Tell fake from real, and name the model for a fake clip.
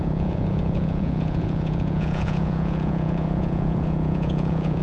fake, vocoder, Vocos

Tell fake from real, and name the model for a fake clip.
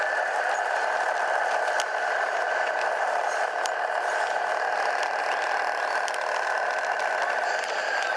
real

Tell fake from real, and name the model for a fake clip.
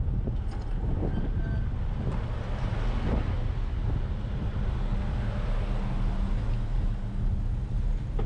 real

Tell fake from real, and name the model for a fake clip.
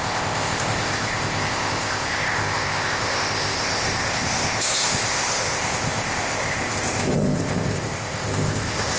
fake, codec, ZipCodec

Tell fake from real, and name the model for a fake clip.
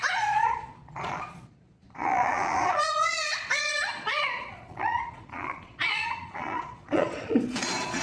fake, vocoder, Vocos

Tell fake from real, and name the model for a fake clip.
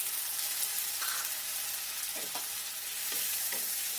real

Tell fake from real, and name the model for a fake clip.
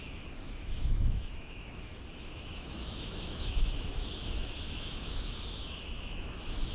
fake, autoencoder, DAC-VAE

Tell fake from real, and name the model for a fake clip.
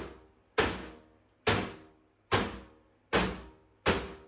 real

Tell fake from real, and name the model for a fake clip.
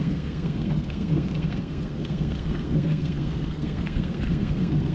fake, codec, SNAC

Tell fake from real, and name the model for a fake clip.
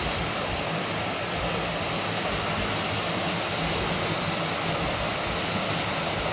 real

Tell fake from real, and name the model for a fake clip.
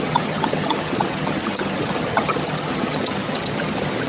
fake, vocoder, HiFi-GAN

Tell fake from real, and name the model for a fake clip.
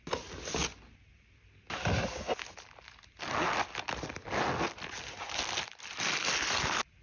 real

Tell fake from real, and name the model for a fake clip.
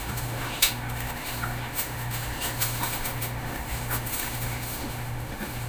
fake, autoencoder, DAC-VAE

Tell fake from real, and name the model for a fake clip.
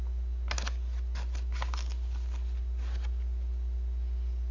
real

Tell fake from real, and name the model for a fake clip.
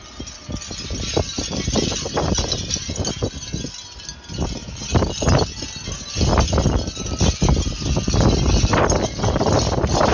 real